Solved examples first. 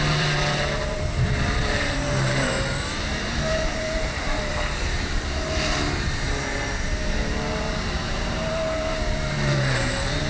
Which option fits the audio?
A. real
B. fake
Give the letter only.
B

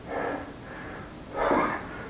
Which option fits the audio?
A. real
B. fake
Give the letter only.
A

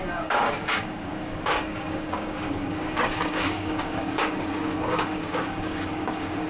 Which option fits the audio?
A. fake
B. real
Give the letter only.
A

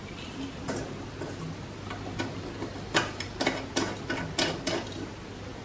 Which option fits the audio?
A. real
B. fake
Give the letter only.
A